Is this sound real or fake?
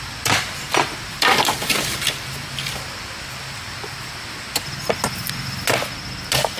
real